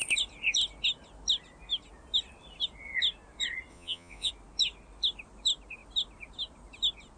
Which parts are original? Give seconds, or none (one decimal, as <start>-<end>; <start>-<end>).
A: 0.0-3.7; 4.3-7.2